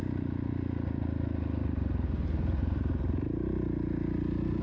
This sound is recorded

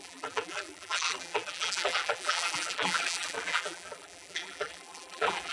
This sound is remade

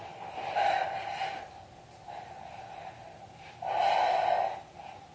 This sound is recorded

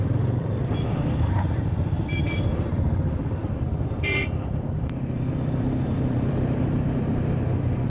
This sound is remade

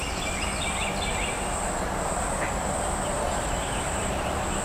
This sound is recorded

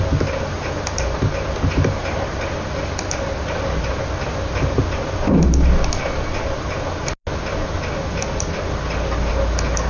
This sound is recorded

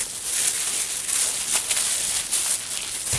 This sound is recorded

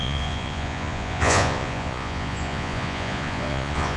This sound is remade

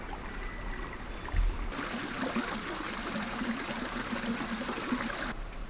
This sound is recorded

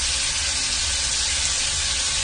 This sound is recorded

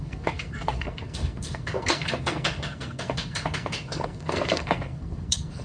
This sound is remade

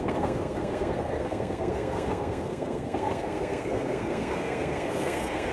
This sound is remade